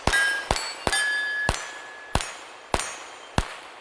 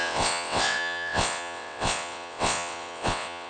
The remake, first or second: second